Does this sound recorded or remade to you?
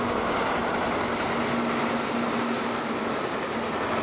recorded